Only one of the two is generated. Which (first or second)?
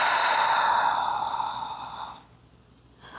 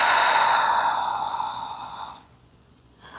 second